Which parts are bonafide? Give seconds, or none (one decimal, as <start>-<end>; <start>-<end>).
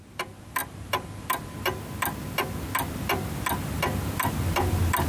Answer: 0.0-5.1